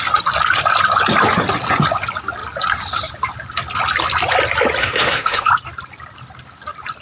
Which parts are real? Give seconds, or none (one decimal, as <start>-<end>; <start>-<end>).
0.0-4.8; 5.5-7.0